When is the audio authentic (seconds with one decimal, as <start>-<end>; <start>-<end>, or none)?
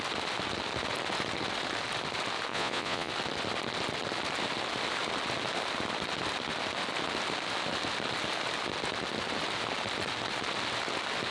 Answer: 0.0-2.5; 3.1-11.3